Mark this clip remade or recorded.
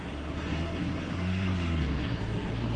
remade